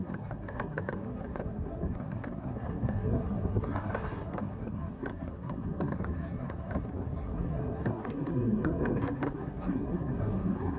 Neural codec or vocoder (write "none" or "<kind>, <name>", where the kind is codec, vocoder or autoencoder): codec, SNAC